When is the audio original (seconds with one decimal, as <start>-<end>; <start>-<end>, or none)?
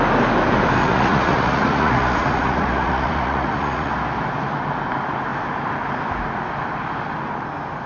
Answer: 0.0-0.8; 3.9-7.9